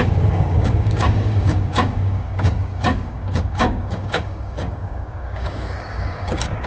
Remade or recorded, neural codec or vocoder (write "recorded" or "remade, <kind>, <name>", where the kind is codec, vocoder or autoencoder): remade, codec, DAC